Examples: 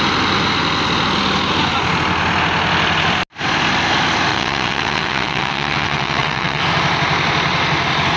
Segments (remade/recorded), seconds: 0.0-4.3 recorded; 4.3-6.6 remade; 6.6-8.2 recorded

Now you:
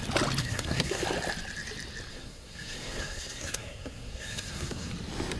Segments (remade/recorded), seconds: 0.0-0.4 recorded; 0.4-1.0 remade; 1.0-2.1 recorded; 2.1-4.9 remade; 4.9-5.4 recorded

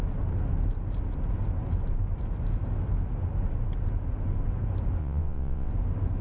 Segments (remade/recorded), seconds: 0.0-5.0 recorded; 5.0-5.7 remade; 5.7-6.2 recorded

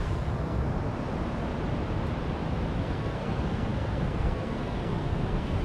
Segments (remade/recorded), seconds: 0.0-0.7 remade; 0.7-2.8 recorded; 2.8-5.6 remade